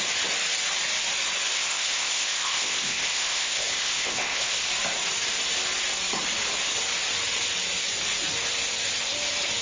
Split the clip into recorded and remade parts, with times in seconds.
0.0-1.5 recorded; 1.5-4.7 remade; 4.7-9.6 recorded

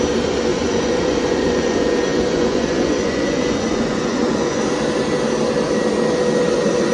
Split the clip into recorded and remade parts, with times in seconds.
0.0-0.5 recorded; 0.5-4.6 remade; 4.6-6.9 recorded

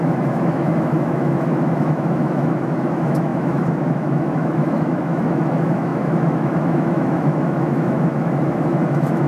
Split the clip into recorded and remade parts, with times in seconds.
0.0-9.3 remade

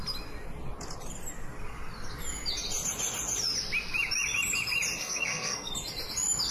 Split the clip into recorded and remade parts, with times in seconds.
0.0-5.0 recorded; 5.0-5.7 remade; 5.7-6.5 recorded

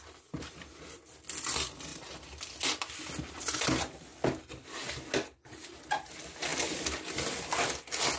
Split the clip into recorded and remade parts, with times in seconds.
0.0-1.9 recorded; 1.9-2.6 remade; 2.6-6.5 recorded; 6.5-7.4 remade; 7.4-8.2 recorded

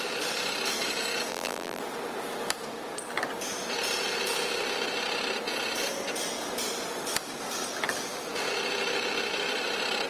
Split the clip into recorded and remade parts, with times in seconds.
0.0-1.3 recorded; 1.3-1.8 remade; 1.8-10.1 recorded

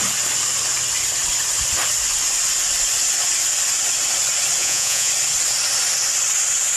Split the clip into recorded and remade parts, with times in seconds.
0.0-4.6 recorded; 4.6-5.1 remade; 5.1-6.8 recorded

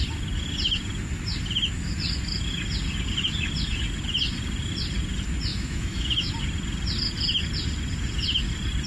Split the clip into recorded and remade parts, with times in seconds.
0.0-5.5 recorded; 5.5-6.3 remade; 6.3-8.9 recorded